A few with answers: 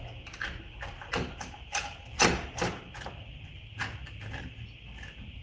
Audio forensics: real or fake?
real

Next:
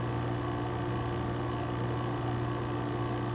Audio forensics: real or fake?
real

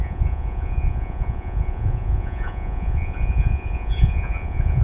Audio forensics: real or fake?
fake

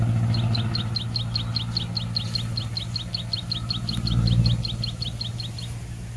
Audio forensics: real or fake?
real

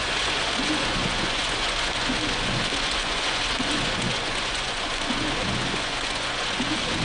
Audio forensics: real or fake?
fake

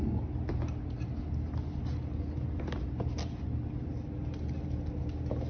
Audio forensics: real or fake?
real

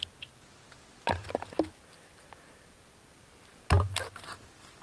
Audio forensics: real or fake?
real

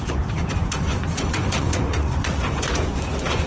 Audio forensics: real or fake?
fake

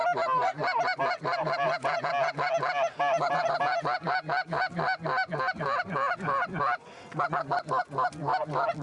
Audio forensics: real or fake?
real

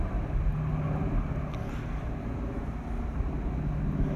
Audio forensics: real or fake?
real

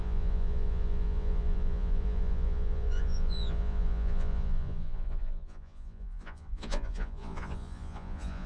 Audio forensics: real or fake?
fake